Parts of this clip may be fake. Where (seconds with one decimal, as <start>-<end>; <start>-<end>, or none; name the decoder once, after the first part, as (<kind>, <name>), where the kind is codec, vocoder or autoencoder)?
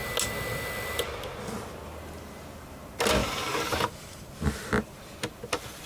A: 3.2-4.3 (vocoder, BigVGAN v2)